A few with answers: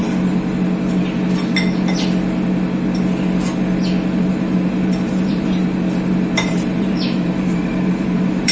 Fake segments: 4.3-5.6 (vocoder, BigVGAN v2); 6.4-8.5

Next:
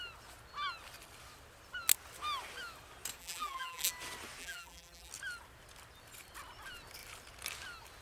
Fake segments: 3.2-3.9 (vocoder, BigVGAN v2); 4.4-5.1

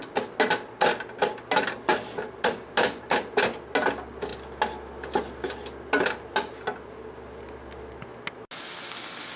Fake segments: none

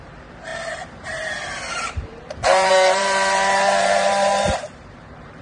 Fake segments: 0.0-5.4 (vocoder, BigVGAN v2)

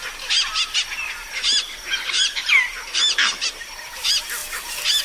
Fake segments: 1.2-3.9 (vocoder, BigVGAN v2)

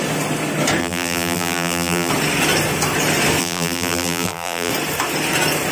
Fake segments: 0.8-2.1 (vocoder, BigVGAN v2); 3.4-4.7

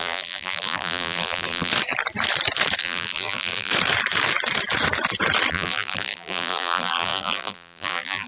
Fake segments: 0.0-1.7 (vocoder, BigVGAN v2); 2.8-3.7; 5.5-8.3